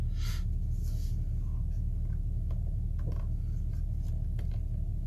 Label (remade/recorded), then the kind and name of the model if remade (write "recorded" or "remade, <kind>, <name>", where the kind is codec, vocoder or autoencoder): recorded